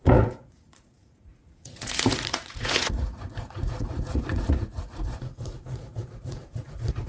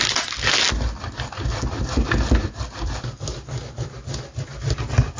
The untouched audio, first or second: second